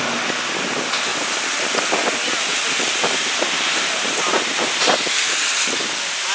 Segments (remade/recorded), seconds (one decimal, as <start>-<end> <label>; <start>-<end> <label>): 0.0-1.1 recorded; 1.1-1.9 remade; 1.9-2.5 recorded; 2.5-4.7 remade; 4.7-6.3 recorded